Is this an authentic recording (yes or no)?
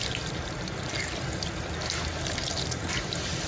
yes